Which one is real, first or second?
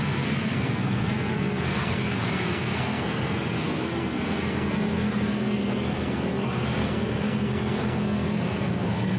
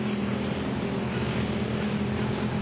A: second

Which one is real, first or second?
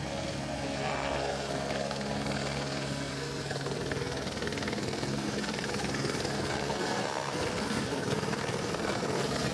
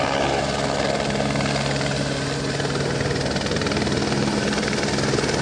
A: second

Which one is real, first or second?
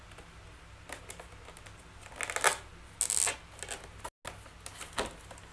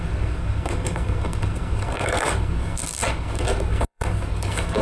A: first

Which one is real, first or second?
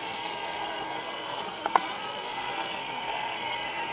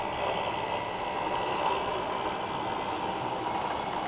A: second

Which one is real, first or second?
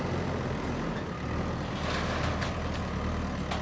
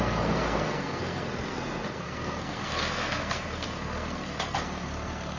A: first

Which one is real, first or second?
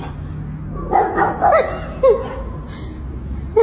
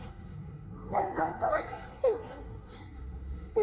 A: first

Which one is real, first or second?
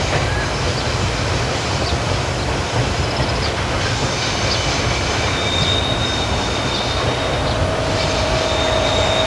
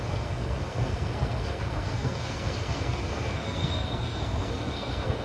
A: first